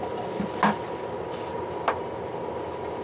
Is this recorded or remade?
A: recorded